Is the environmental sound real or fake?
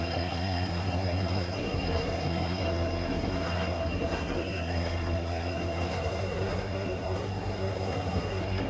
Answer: fake